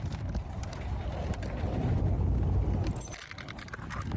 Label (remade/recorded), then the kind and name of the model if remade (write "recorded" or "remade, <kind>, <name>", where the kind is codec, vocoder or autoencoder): recorded